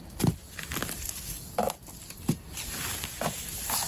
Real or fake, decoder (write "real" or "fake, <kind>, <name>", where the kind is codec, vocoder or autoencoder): real